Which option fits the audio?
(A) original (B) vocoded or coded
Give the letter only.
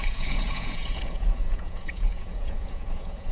B